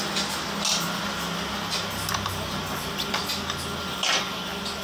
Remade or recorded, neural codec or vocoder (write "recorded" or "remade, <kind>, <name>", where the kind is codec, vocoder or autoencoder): recorded